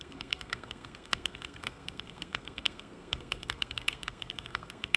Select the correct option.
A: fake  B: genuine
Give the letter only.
A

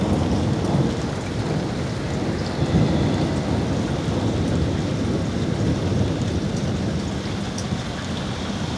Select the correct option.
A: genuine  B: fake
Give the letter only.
A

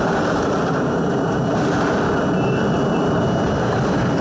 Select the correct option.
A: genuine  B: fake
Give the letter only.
B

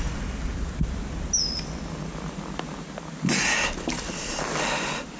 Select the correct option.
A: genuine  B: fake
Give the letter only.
A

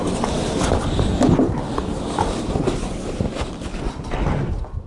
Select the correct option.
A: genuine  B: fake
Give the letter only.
A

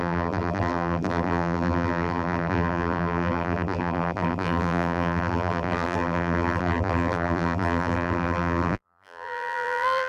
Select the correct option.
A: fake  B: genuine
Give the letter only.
A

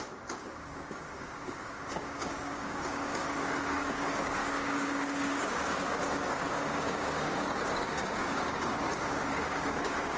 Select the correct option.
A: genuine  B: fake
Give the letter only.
B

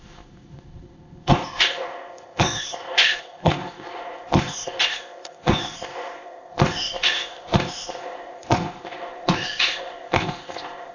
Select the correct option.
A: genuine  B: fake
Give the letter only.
B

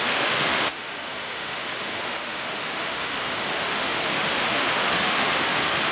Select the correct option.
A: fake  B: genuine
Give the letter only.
A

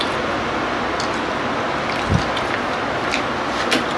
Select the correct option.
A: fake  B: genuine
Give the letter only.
B